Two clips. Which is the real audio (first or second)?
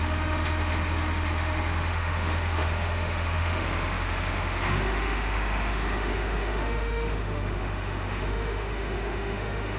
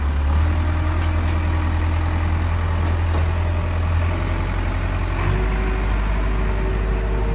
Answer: second